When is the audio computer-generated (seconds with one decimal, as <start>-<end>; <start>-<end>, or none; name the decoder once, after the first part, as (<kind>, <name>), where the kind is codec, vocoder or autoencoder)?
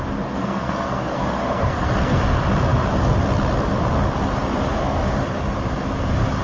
0.4-2.2 (codec, SNAC)